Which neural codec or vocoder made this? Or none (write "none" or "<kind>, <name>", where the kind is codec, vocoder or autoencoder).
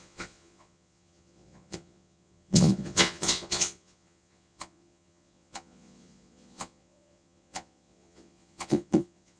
vocoder, Vocos